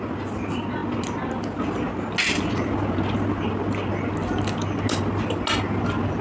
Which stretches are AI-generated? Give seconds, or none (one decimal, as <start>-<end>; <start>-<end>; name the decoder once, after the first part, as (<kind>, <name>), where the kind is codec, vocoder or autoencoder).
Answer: none

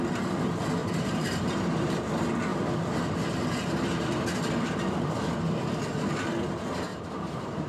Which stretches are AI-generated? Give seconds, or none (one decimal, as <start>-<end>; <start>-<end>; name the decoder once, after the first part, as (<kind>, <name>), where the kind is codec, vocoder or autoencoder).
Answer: 0.8-2.1 (vocoder, BigVGAN v2); 6.9-7.7

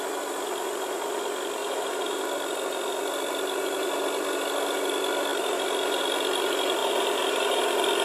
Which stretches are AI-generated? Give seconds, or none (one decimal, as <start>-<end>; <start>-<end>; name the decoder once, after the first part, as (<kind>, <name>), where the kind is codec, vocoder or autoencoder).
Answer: 1.6-2.2 (vocoder, BigVGAN v2); 6.8-7.6

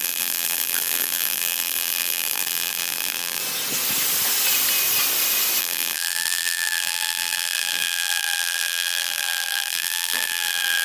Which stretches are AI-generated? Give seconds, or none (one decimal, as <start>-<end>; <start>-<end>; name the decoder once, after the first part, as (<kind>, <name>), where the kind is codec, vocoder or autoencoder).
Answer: 0.0-3.4 (vocoder, BigVGAN v2); 5.6-10.8

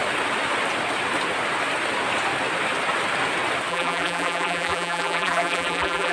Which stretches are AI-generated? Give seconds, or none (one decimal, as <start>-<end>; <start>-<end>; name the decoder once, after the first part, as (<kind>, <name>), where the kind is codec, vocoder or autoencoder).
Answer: 3.7-6.1 (vocoder, BigVGAN v2)

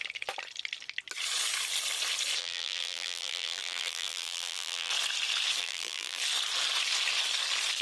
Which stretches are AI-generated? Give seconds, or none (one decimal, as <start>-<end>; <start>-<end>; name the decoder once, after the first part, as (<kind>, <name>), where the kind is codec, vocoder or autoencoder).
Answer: 2.4-4.9 (vocoder, BigVGAN v2); 5.6-6.2

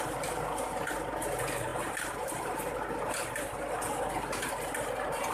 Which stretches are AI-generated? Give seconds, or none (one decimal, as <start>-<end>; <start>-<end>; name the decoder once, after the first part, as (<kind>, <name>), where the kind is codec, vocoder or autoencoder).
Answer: none